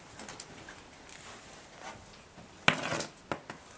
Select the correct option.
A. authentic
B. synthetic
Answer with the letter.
A